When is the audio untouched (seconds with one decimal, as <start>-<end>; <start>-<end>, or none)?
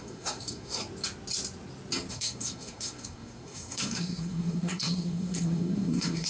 0.8-2.1